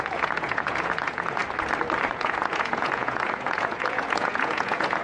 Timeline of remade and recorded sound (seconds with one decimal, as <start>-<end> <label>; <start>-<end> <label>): 0.0-1.4 remade; 1.4-2.1 recorded; 2.1-5.0 remade